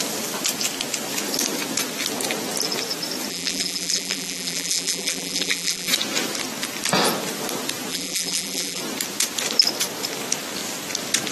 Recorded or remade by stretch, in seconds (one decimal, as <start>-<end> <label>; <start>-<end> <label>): 0.0-3.3 recorded; 3.3-5.9 remade; 5.9-7.9 recorded; 7.9-8.8 remade; 8.8-11.3 recorded